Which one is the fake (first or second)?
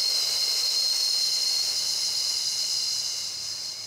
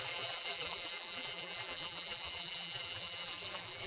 second